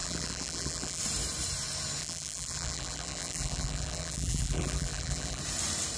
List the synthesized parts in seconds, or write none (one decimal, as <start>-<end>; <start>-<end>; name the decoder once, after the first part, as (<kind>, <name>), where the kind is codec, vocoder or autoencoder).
0.0-1.0 (vocoder, BigVGAN v2); 2.0-5.4